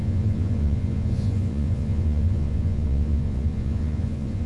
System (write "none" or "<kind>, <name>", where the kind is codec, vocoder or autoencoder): vocoder, Vocos